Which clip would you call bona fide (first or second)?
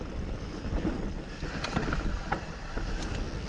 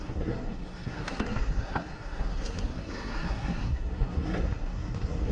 first